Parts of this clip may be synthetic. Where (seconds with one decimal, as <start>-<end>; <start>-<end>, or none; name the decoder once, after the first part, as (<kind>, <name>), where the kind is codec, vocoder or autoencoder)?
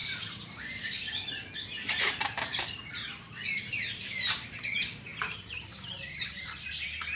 0.0-7.2 (vocoder, BigVGAN v2)